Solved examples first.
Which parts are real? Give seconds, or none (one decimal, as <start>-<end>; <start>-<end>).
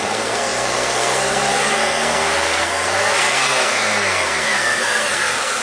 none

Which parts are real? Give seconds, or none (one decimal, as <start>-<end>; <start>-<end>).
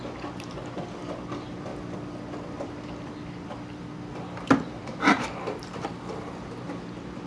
1.7-2.6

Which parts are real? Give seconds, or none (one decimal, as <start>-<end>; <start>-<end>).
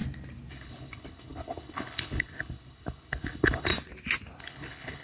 0.0-0.5; 3.7-4.4